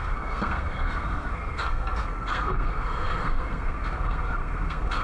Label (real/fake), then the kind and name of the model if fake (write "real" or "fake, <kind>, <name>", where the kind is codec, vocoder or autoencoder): fake, codec, SNAC